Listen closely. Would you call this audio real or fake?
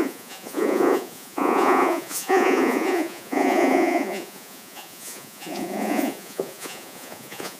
fake